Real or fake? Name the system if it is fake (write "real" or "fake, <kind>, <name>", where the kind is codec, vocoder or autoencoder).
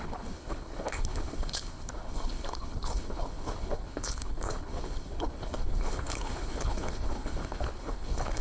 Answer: fake, codec, HILCodec